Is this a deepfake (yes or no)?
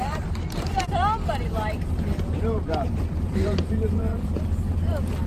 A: yes